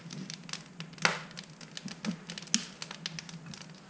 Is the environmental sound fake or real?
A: real